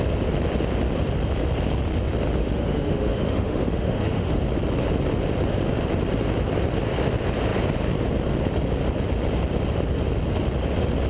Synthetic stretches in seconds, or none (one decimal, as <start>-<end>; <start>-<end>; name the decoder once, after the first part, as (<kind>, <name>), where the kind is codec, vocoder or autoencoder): 2.4-4.4 (autoencoder, DAC-VAE)